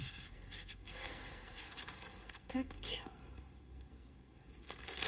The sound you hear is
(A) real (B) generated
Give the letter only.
B